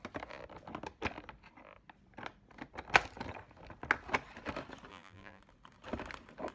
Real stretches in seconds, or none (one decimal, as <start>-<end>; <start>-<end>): 0.0-4.9; 5.4-6.5